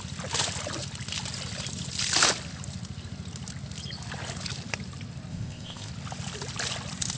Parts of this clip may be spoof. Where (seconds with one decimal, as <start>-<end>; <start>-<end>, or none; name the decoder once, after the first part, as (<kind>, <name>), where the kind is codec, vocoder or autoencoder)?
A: 5.3-5.9 (codec, ZipCodec)